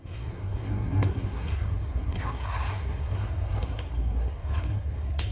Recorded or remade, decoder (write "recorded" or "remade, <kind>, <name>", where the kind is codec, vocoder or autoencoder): remade, codec, SNAC